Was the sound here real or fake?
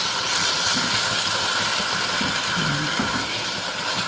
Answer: real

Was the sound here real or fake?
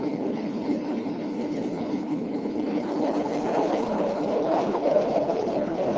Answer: fake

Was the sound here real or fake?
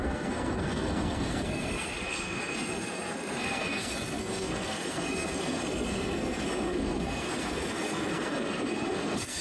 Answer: fake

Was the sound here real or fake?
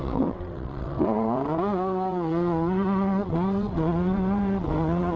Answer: fake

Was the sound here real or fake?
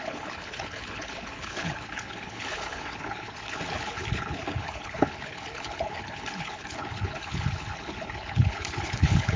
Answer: fake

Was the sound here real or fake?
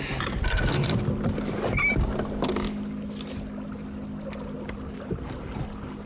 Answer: real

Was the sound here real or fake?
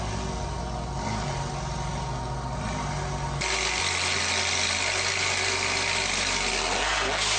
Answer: real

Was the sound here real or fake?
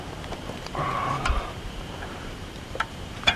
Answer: fake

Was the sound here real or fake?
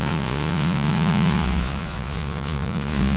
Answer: fake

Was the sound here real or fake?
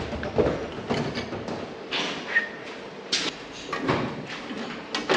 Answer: real